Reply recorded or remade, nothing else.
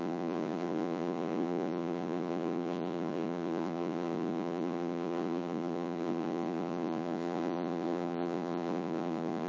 remade